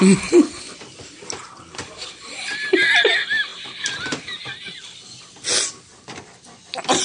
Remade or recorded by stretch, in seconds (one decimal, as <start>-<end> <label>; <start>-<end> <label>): 0.0-7.0 recorded